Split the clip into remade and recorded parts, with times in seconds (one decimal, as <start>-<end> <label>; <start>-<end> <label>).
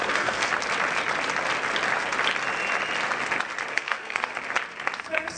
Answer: 0.0-0.5 remade; 0.5-3.7 recorded; 3.7-4.3 remade; 4.3-5.0 recorded; 5.0-5.4 remade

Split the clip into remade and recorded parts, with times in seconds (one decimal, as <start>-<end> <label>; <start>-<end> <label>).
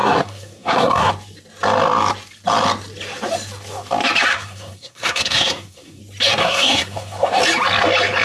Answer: 0.0-1.1 remade; 1.1-4.3 recorded; 4.3-6.0 remade; 6.0-6.4 recorded; 6.4-7.4 remade; 7.4-8.2 recorded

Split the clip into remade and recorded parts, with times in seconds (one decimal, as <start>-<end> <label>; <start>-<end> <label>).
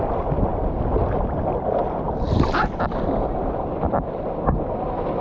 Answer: 0.0-5.2 recorded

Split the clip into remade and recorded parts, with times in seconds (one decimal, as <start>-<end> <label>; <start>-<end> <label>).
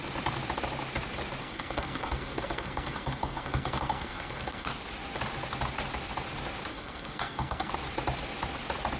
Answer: 0.0-1.4 recorded; 1.4-4.7 remade; 4.7-6.7 recorded; 6.7-7.7 remade; 7.7-9.0 recorded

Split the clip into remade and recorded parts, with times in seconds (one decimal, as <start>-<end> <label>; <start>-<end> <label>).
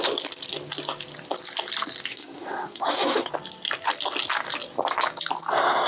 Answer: 0.0-2.1 recorded; 2.1-3.3 remade; 3.3-5.9 recorded